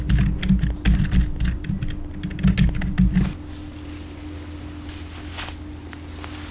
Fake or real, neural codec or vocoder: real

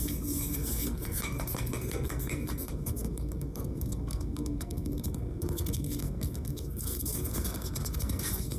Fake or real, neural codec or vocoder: fake, codec, SNAC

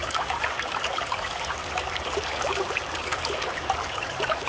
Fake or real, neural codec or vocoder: fake, codec, DAC